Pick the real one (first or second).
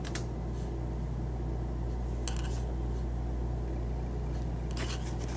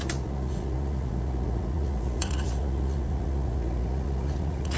first